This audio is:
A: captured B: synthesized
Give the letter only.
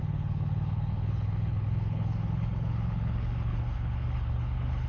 B